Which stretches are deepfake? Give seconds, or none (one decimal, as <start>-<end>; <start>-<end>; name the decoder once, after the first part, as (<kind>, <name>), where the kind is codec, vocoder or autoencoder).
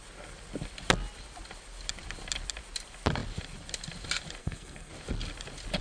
4.4-4.9 (codec, SNAC)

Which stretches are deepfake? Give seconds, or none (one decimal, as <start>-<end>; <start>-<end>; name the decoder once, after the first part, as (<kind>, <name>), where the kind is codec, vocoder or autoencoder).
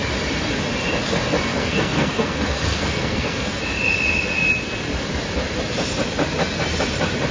1.5-3.6 (codec, SNAC)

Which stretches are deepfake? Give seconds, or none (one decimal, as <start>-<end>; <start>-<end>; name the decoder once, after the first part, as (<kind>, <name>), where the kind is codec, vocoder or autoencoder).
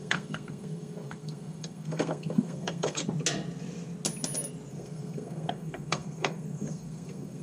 0.0-3.0 (codec, SNAC); 4.7-7.4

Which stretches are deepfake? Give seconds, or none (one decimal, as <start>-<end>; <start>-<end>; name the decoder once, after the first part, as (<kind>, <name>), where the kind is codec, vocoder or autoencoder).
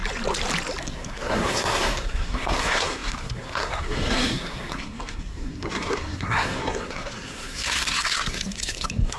0.8-9.2 (codec, SNAC)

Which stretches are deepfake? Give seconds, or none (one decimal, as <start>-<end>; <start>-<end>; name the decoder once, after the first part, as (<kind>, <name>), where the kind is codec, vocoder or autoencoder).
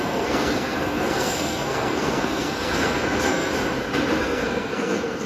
0.0-3.5 (codec, SNAC); 4.2-5.3